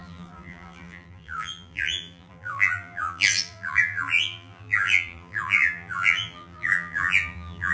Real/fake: fake